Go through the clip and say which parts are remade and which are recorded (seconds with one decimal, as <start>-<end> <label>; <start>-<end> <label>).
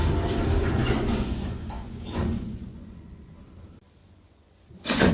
0.0-0.6 recorded; 0.6-3.3 remade; 3.3-4.0 recorded; 4.0-5.1 remade